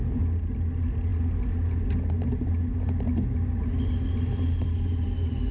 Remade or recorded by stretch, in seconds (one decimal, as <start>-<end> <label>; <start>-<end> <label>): 0.0-5.5 recorded